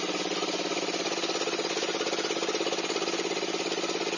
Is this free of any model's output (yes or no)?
yes